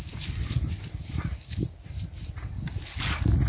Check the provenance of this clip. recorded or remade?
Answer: recorded